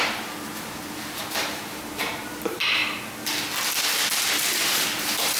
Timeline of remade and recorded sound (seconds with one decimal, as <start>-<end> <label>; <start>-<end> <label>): 0.0-2.8 remade; 2.8-4.3 recorded; 4.3-5.4 remade